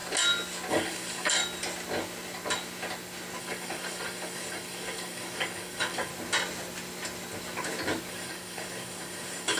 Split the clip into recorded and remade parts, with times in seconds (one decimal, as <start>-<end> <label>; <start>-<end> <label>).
0.0-0.7 recorded; 0.7-1.4 remade; 1.4-3.4 recorded; 3.4-6.1 remade; 6.1-8.1 recorded; 8.1-9.6 remade